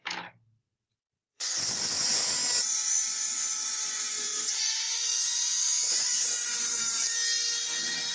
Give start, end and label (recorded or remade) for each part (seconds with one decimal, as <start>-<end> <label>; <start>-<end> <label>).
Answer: 0.0-1.3 recorded; 1.3-2.2 remade; 2.2-2.8 recorded; 2.8-6.8 remade; 6.8-8.1 recorded